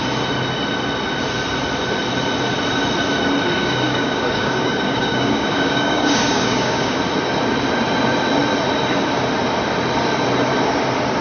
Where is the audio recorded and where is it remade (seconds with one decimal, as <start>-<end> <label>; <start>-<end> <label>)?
0.0-3.6 recorded; 3.6-7.0 remade; 7.0-11.2 recorded